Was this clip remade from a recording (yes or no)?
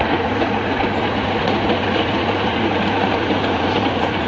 yes